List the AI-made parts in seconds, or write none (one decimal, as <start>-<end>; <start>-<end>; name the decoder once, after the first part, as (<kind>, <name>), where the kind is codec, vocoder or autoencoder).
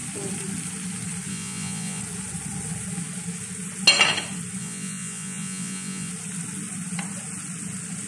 1.3-2.0 (vocoder, Vocos); 4.6-6.1